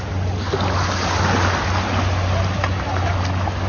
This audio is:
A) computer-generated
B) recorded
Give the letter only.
B